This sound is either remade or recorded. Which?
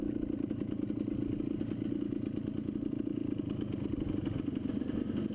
recorded